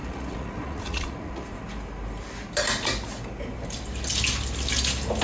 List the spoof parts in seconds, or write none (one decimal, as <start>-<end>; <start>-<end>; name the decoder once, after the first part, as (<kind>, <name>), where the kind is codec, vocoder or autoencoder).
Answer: 0.0-1.6 (vocoder, Vocos)